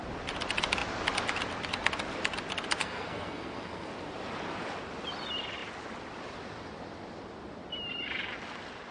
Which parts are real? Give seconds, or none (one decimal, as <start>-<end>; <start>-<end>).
0.0-2.8; 3.9-8.9